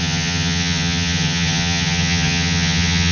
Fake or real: fake